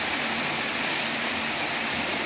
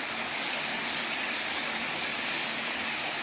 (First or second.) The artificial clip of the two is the second